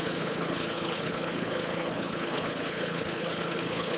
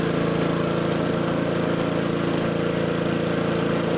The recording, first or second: second